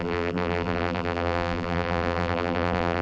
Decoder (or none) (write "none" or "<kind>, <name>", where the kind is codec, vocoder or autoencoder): vocoder, BigVGAN v2